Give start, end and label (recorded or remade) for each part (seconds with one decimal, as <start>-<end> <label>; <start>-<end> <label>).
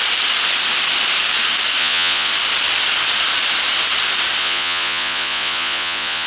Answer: 0.0-1.8 recorded; 1.8-2.3 remade; 2.3-4.4 recorded; 4.4-6.3 remade